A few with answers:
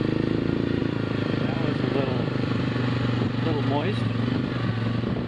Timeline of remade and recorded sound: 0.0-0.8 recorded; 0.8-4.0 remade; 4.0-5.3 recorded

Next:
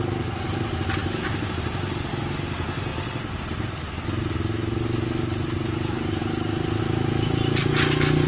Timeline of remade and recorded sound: 0.0-1.0 recorded; 1.0-1.5 remade; 1.5-8.3 recorded

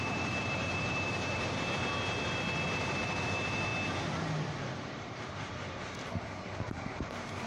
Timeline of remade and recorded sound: 0.0-3.7 remade; 3.7-4.6 recorded; 4.6-7.5 remade

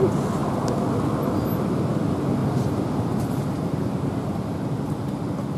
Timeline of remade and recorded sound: 0.0-2.4 recorded; 2.4-4.1 remade; 4.1-5.6 recorded